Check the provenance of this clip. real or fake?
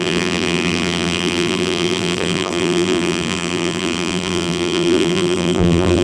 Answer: fake